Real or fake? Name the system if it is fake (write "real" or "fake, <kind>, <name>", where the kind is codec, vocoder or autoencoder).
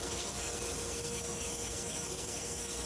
fake, codec, SNAC